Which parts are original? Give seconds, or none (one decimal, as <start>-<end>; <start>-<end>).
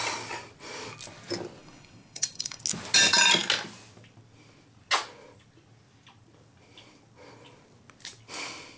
0.0-1.6; 2.6-8.8